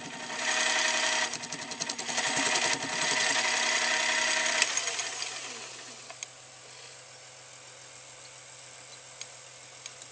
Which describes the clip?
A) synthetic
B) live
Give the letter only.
B